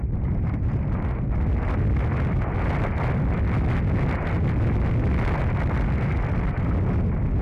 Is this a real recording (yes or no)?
yes